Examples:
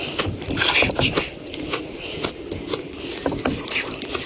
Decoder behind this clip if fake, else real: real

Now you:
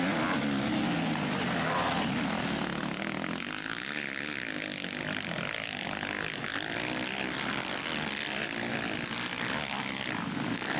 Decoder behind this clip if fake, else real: real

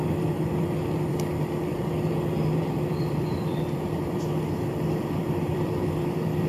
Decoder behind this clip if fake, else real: fake, vocoder, BigVGAN v2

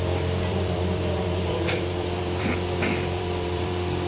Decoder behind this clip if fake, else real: fake, vocoder, BigVGAN v2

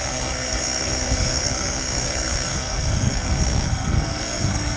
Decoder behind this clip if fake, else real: fake, codec, SNAC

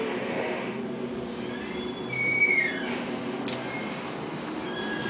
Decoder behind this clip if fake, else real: real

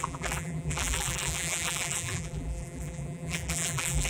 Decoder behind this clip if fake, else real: fake, vocoder, BigVGAN v2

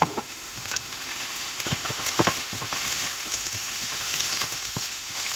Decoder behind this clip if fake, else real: fake, autoencoder, DAC-VAE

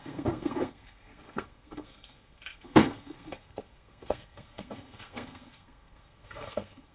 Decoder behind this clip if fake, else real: fake, codec, SNAC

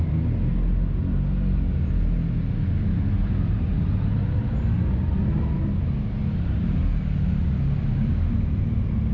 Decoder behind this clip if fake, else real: real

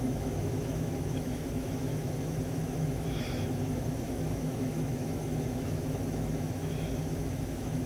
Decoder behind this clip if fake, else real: fake, autoencoder, DAC-VAE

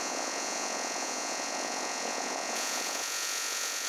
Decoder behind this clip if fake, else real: fake, vocoder, Vocos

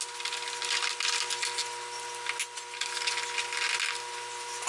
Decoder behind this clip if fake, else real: real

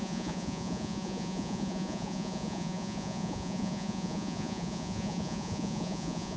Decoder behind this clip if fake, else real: fake, vocoder, Vocos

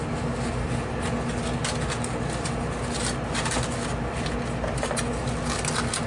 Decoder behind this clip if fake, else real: real